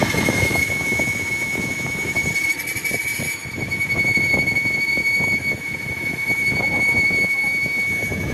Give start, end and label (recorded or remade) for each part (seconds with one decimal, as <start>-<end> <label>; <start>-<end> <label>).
0.0-2.2 remade; 2.2-3.0 recorded; 3.0-8.3 remade